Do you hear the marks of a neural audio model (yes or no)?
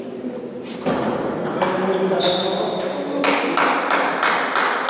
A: no